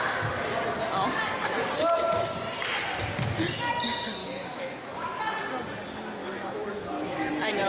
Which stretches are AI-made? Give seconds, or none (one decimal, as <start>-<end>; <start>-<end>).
4.2-4.9; 6.2-7.3

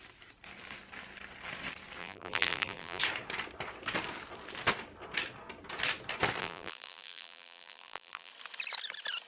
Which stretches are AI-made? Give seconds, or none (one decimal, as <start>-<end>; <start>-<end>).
2.0-3.0; 6.4-8.3

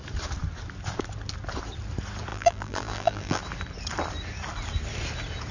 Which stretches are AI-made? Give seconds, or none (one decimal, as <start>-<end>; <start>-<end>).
2.3-3.4

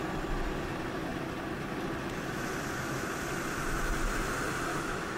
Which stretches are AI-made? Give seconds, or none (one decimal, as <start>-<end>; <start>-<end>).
4.7-5.2

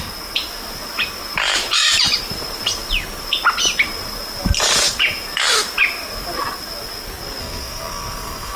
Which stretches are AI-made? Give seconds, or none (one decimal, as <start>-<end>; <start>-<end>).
7.4-8.6